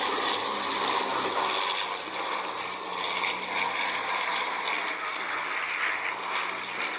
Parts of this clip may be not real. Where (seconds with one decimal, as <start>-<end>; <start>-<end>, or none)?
none